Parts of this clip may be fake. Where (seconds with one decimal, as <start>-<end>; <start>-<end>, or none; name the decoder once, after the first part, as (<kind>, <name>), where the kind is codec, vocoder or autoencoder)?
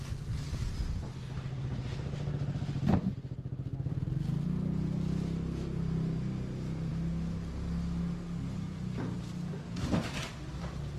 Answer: none